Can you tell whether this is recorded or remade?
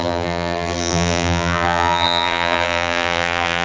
remade